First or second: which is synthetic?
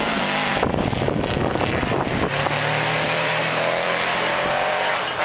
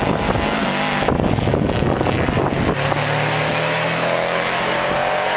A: first